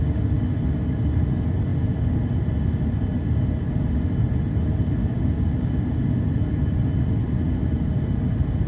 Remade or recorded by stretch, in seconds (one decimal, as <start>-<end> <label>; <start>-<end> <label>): 0.0-8.7 recorded